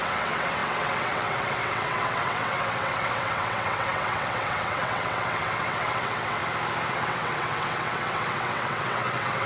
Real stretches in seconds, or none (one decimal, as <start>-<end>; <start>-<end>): 6.4-6.9